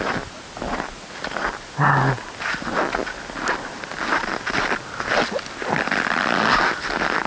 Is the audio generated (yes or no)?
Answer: no